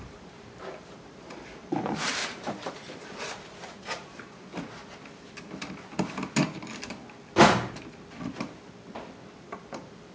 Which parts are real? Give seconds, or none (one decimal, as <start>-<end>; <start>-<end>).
4.5-9.4